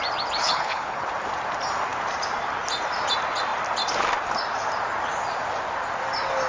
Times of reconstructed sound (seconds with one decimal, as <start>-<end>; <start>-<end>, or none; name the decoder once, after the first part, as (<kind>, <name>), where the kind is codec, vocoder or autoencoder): 0.4-1.1 (codec, HILCodec)